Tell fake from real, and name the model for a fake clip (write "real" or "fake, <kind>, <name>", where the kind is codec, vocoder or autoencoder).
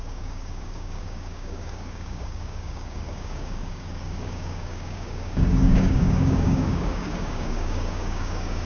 fake, codec, DAC